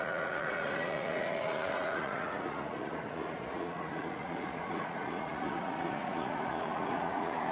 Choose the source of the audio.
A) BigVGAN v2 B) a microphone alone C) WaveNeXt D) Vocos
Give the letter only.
D